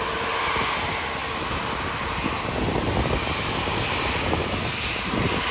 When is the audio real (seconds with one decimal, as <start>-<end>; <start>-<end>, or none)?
0.0-5.5